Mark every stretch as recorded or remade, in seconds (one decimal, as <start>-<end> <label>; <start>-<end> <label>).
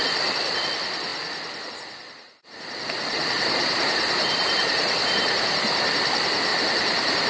0.0-3.1 recorded; 3.1-6.1 remade; 6.1-6.5 recorded; 6.5-7.3 remade